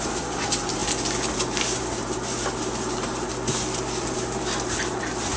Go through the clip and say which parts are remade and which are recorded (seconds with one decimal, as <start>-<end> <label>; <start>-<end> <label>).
0.0-0.8 remade; 0.8-1.4 recorded; 1.4-3.3 remade; 3.3-4.0 recorded; 4.0-5.4 remade